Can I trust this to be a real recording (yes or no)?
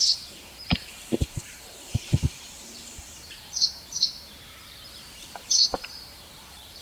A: no